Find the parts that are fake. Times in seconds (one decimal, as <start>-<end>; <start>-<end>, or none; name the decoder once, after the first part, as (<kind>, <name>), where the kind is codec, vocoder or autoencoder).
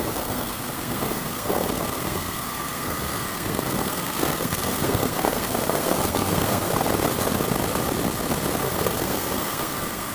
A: 0.0-6.7 (codec, SNAC); 8.6-10.1